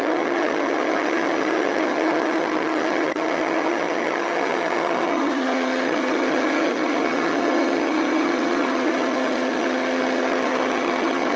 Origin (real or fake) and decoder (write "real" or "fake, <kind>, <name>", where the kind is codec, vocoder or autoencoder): fake, vocoder, HiFi-GAN